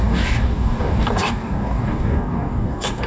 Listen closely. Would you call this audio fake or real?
fake